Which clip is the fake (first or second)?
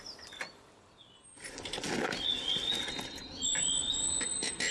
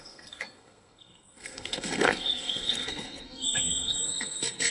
second